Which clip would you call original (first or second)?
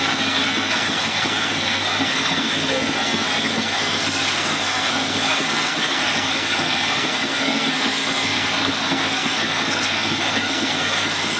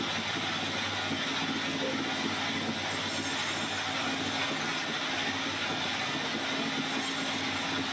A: second